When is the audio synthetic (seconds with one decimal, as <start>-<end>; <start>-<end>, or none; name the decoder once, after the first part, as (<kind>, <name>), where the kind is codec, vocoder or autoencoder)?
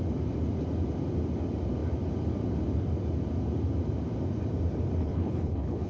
5.0-5.9 (codec, HILCodec)